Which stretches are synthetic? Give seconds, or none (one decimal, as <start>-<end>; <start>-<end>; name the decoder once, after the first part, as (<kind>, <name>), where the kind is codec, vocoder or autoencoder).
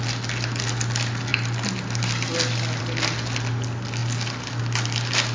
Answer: none